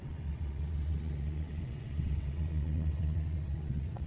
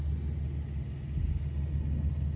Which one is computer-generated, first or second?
first